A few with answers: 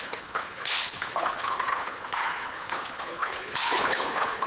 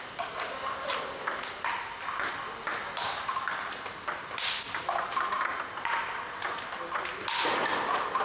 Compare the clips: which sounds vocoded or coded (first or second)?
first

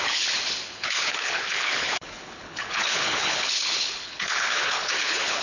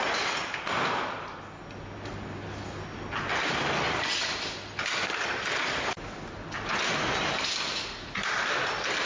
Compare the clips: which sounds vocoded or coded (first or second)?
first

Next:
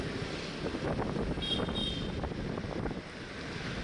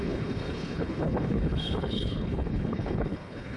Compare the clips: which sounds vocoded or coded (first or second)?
second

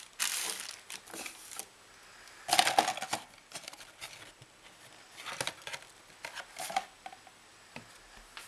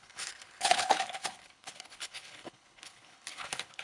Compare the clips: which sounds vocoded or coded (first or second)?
second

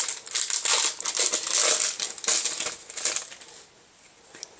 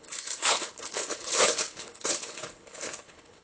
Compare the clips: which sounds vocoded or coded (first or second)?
second